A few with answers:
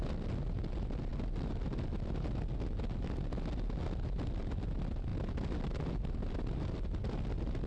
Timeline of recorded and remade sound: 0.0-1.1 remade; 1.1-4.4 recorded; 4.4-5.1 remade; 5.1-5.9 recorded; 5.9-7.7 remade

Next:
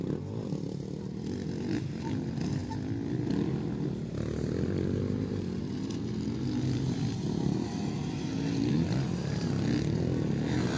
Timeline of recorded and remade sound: 0.0-10.8 recorded

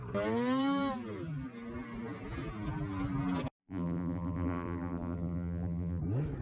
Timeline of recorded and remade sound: 0.0-3.6 recorded; 3.6-6.0 remade; 6.0-6.4 recorded

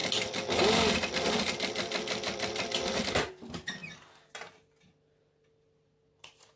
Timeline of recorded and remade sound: 0.0-6.6 recorded

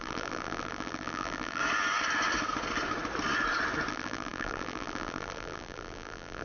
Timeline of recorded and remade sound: 0.0-1.6 remade; 1.6-3.9 recorded; 3.9-6.4 remade

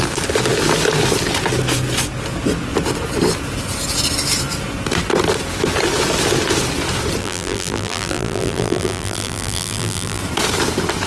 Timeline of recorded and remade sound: 0.0-7.2 recorded; 7.2-10.2 remade; 10.2-11.1 recorded

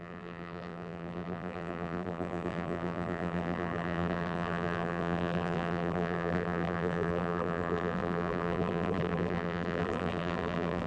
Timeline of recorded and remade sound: 0.0-10.9 remade

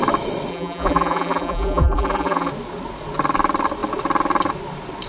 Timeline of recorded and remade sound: 0.0-0.5 recorded; 0.5-2.5 remade; 2.5-5.1 recorded